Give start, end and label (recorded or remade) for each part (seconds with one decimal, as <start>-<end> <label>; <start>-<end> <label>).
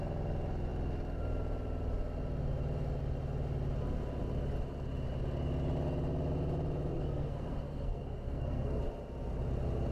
0.0-6.9 recorded; 6.9-8.8 remade; 8.8-9.9 recorded